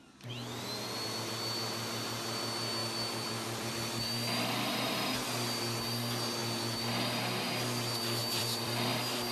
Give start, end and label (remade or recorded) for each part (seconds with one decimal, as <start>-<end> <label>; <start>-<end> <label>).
0.0-2.8 recorded; 2.8-3.7 remade; 3.7-8.2 recorded; 8.2-8.9 remade; 8.9-9.3 recorded

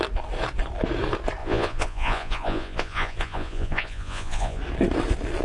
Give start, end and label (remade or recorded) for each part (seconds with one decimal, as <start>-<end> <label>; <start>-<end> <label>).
0.0-1.4 recorded; 1.4-4.6 remade; 4.6-5.4 recorded

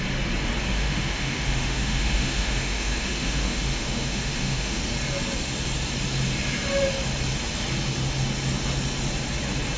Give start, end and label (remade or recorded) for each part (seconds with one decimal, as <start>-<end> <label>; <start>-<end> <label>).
0.0-0.7 recorded; 0.7-4.8 remade; 4.8-9.8 recorded

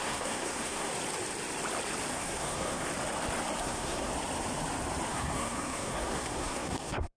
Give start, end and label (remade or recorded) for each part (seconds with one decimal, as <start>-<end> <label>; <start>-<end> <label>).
0.0-0.9 remade; 0.9-2.1 recorded; 2.1-2.9 remade; 2.9-3.6 recorded; 3.6-4.1 remade; 4.1-5.1 recorded; 5.1-7.2 remade

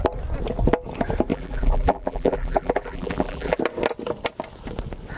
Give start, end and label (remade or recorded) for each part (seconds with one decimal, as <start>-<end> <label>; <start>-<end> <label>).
0.0-1.3 recorded; 1.3-3.6 remade; 3.6-5.2 recorded

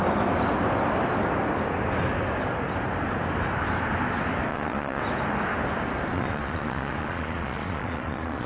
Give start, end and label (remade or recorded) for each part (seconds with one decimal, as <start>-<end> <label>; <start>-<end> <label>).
0.0-4.5 recorded; 4.5-5.0 remade; 5.0-6.1 recorded; 6.1-8.5 remade